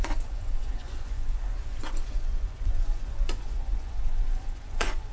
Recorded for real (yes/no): no